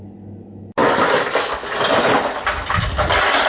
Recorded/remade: recorded